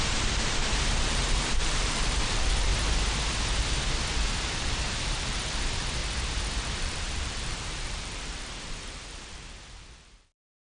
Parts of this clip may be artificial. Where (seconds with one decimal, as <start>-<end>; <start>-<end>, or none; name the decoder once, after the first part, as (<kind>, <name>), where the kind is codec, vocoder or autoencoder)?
0.0-2.7 (vocoder, BigVGAN v2); 4.5-6.0; 6.7-10.7